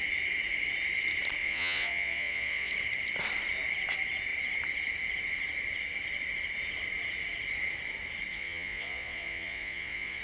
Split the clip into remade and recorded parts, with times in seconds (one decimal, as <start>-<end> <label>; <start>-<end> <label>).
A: 0.0-1.4 recorded; 1.4-2.7 remade; 2.7-8.3 recorded; 8.3-10.2 remade